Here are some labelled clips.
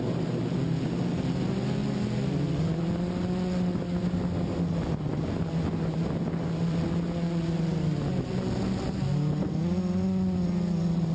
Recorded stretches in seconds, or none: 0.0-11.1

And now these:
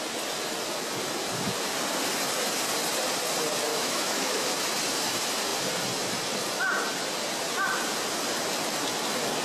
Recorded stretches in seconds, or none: 0.0-3.7; 4.5-9.4